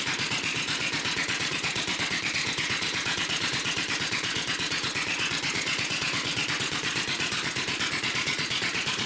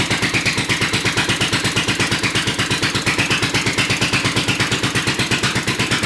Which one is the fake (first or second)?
first